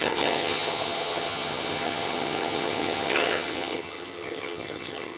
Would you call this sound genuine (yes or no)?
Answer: no